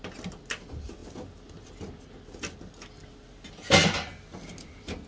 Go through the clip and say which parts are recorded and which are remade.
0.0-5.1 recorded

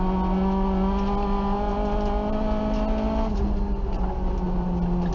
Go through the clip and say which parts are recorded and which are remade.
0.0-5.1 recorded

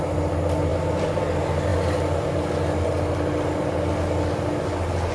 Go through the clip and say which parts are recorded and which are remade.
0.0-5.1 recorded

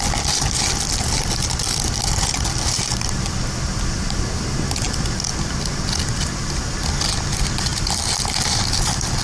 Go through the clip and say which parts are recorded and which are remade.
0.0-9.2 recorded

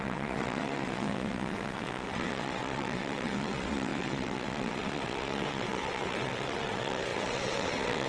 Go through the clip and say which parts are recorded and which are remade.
0.0-8.1 remade